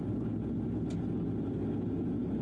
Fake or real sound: real